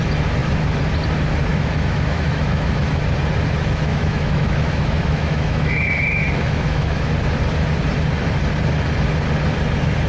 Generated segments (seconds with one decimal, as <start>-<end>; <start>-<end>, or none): 1.5-3.0; 3.9-7.1